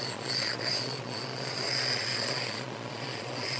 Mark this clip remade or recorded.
remade